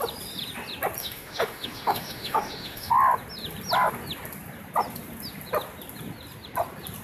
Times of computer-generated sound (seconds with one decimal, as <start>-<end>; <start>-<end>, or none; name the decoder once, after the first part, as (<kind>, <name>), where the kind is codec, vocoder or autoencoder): 1.0-2.9 (autoencoder, DAC-VAE)

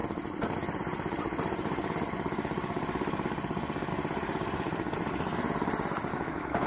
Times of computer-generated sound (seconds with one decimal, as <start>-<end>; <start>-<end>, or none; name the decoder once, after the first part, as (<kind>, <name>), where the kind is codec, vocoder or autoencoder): 6.1-6.7 (autoencoder, DAC-VAE)